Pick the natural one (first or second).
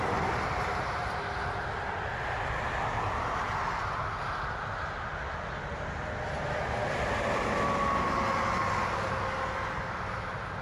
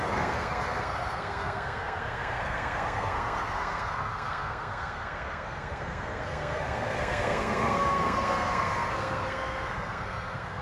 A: first